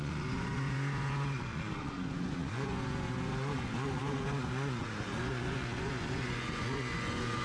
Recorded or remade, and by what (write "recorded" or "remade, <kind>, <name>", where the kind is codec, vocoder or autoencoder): remade, vocoder, Vocos